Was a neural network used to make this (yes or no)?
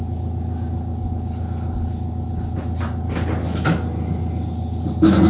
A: no